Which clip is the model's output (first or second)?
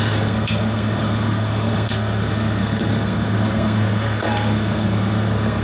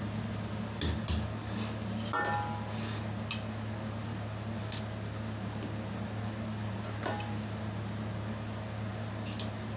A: first